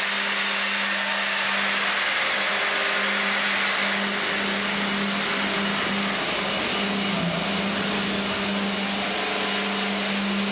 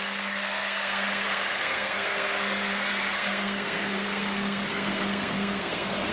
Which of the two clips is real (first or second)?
first